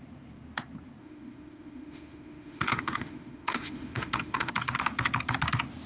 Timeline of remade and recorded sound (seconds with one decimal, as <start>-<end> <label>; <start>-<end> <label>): 0.0-1.0 recorded; 1.0-4.5 remade; 4.5-5.9 recorded